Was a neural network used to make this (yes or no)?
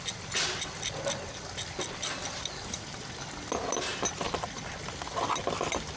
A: no